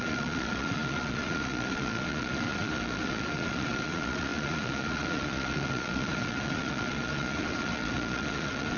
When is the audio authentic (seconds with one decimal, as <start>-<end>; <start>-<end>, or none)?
none